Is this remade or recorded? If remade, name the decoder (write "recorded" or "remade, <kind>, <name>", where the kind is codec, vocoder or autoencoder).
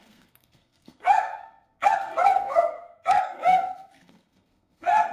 remade, codec, SNAC